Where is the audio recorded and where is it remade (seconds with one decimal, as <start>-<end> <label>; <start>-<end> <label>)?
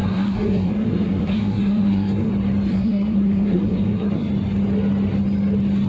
0.0-2.3 remade; 2.3-2.7 recorded; 2.7-4.3 remade; 4.3-5.9 recorded